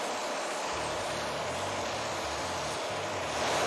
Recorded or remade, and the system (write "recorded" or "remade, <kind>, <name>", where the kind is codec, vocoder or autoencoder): recorded